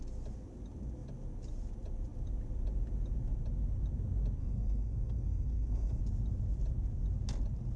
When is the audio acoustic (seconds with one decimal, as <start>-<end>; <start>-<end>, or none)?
0.0-4.4; 6.0-7.8